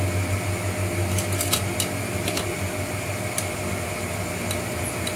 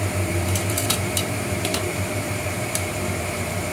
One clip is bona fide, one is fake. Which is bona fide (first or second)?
first